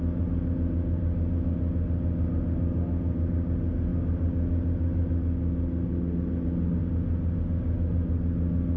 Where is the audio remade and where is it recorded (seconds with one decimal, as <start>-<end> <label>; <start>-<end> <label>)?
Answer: 0.0-8.8 recorded